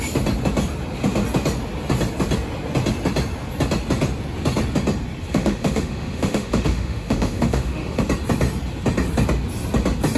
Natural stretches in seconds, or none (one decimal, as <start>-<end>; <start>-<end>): 0.0-5.3; 8.0-10.2